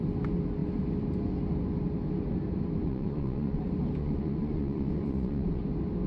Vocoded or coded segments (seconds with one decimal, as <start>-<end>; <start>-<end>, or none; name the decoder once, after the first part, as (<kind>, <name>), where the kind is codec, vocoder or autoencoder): 2.8-3.6 (vocoder, Vocos); 4.0-5.6